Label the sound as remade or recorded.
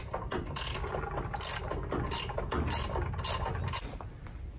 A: recorded